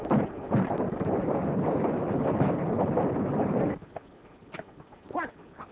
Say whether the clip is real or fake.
real